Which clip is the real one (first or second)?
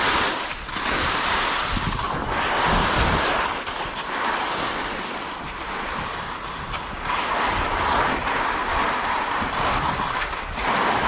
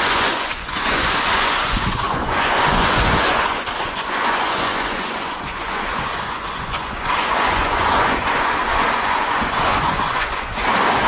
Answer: first